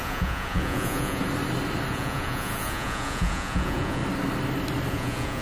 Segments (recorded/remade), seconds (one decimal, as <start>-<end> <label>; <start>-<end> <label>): 0.0-1.2 remade; 1.2-1.9 recorded; 1.9-4.0 remade; 4.0-4.9 recorded; 4.9-5.4 remade